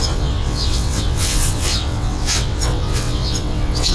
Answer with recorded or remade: remade